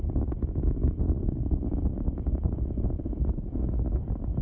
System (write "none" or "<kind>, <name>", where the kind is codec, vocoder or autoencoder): none